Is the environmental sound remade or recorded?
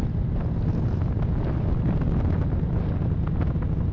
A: recorded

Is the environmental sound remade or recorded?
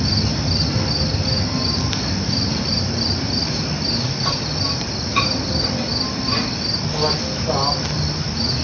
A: recorded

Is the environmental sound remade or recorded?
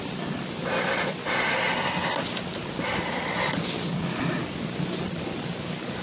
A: recorded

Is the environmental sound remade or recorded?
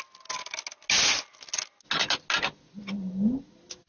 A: recorded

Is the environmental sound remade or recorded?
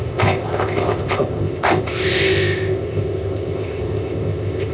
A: remade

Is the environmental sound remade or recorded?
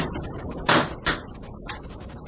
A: recorded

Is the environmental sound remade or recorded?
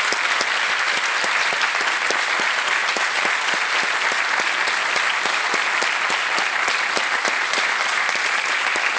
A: recorded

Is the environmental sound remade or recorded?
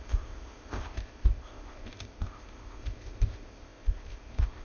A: remade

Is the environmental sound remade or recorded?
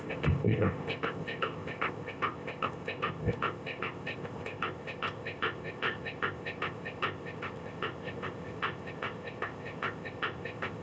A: remade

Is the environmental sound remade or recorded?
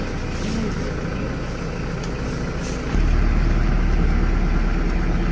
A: recorded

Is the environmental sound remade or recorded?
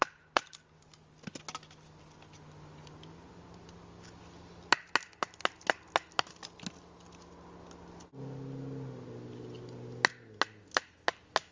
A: recorded